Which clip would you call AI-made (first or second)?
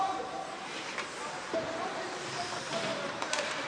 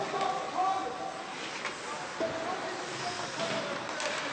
first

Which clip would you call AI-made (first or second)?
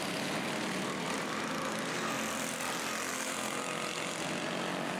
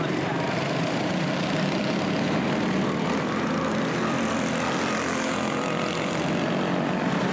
second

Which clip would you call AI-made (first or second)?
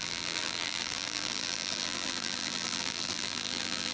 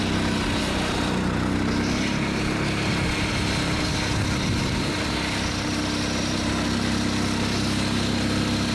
first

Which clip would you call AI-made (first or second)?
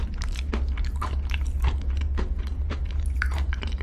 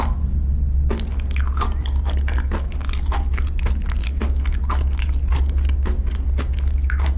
first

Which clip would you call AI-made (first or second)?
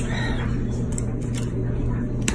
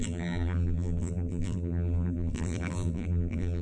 second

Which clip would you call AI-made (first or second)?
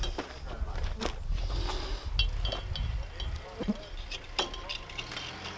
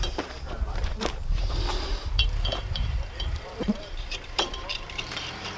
second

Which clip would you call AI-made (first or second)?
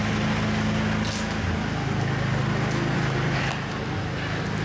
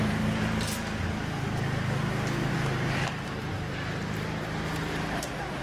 second